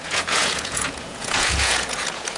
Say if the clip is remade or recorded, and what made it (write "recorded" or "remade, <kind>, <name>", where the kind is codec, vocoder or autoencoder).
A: remade, vocoder, Vocos